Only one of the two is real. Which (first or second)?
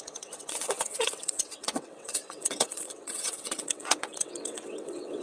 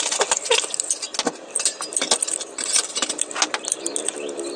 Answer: second